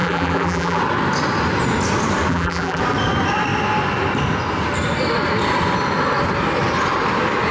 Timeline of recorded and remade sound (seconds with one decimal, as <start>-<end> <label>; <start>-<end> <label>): 0.0-0.8 remade; 0.8-2.3 recorded; 2.3-2.8 remade; 2.8-7.5 recorded